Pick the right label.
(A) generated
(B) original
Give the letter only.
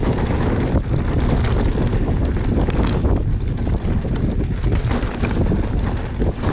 B